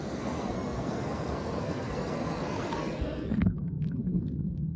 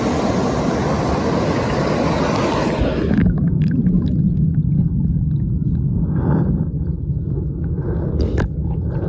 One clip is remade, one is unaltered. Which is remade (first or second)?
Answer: first